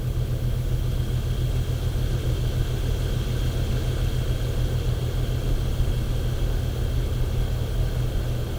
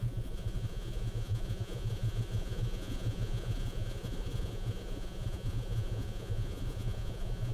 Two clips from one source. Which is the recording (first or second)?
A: first